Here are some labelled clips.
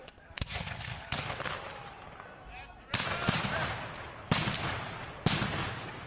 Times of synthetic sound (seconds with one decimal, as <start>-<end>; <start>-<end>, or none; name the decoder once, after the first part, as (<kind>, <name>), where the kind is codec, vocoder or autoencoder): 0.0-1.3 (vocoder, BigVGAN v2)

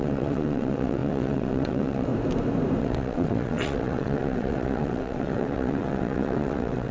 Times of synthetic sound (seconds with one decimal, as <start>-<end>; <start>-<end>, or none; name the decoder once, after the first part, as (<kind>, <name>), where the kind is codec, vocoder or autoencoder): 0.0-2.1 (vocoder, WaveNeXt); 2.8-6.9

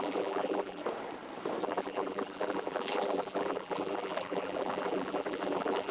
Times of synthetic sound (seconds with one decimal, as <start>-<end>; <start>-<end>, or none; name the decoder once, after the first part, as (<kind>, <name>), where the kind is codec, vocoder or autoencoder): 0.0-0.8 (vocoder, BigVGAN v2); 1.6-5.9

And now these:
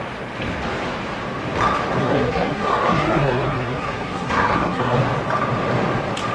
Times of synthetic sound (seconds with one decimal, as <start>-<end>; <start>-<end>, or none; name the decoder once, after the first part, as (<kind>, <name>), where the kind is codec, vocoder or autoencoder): 2.0-5.0 (codec, SNAC)